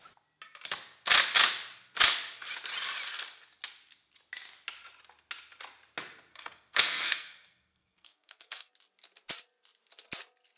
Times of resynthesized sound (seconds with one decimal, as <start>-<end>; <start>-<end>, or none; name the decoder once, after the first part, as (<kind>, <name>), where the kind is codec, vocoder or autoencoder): 6.3-8.7 (codec, SNAC)

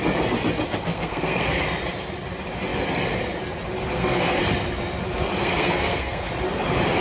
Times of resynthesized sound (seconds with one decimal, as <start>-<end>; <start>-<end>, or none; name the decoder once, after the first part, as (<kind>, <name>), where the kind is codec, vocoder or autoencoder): 0.9-1.6 (codec, SNAC); 3.9-4.4; 5.4-6.3

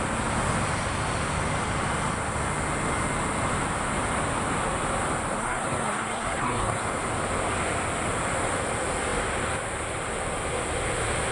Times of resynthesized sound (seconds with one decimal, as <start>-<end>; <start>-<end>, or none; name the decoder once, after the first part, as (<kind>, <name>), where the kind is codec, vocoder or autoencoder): 5.4-6.8 (codec, SNAC)

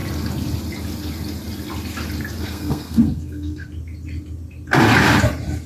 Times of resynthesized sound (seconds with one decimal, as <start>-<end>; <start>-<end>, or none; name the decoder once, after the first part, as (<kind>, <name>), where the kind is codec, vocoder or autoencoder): 2.4-3.7 (codec, SNAC)

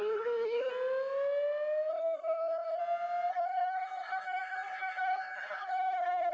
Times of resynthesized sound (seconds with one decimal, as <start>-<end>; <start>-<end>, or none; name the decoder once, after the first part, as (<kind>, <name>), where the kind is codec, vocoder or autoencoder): 0.0-0.7 (codec, SNAC); 1.9-2.8; 3.3-6.3

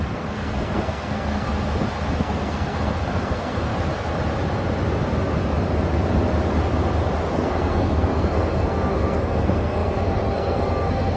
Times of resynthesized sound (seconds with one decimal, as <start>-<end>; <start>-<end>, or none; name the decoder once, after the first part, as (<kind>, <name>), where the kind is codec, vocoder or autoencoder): 0.0-1.5 (codec, SNAC); 2.2-3.7; 7.3-11.2